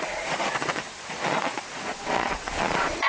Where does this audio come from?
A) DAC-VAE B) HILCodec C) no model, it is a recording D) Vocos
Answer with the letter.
D